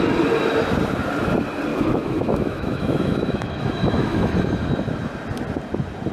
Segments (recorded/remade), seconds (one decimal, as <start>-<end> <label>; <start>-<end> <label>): 0.0-1.7 recorded; 1.7-4.4 remade; 4.4-6.1 recorded